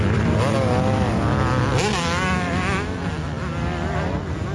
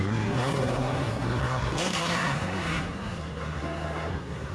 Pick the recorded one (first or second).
first